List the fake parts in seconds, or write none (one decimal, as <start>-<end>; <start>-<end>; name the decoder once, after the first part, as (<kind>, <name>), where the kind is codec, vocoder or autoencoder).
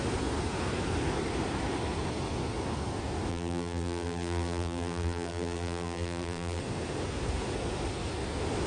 3.3-6.6 (vocoder, BigVGAN v2)